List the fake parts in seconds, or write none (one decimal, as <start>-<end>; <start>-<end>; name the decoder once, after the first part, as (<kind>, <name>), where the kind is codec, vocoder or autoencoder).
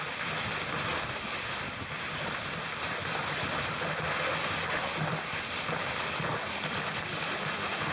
none